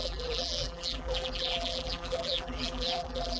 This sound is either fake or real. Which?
fake